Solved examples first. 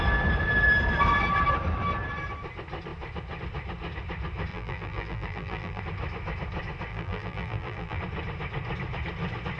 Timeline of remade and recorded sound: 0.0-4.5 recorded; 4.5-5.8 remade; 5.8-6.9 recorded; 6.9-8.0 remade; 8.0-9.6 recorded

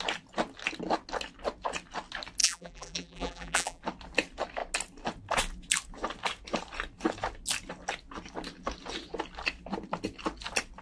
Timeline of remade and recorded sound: 0.0-2.4 recorded; 2.4-3.8 remade; 3.8-10.8 recorded

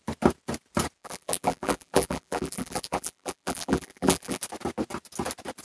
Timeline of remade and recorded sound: 0.0-1.0 recorded; 1.0-4.4 remade; 4.4-5.6 recorded

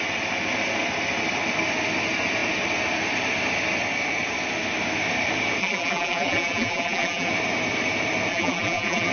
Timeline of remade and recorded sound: 0.0-5.6 recorded; 5.6-7.3 remade; 7.3-8.3 recorded; 8.3-9.1 remade

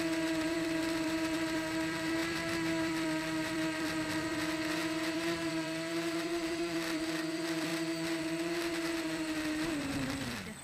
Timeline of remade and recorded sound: 0.0-7.7 remade; 7.7-8.2 recorded; 8.2-10.6 remade